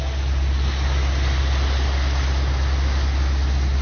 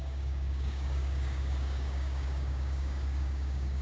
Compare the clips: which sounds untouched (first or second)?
first